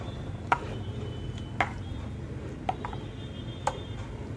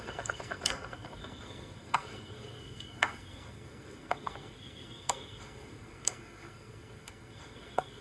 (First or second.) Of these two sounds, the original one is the first